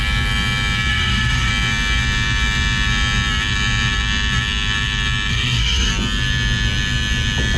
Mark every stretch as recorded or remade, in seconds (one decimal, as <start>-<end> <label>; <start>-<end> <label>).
0.0-0.9 recorded; 0.9-1.5 remade; 1.5-5.3 recorded; 5.3-5.9 remade; 5.9-7.6 recorded